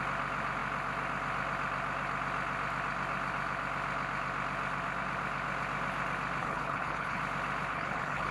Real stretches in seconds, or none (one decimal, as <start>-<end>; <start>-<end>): 0.0-6.4; 7.2-7.7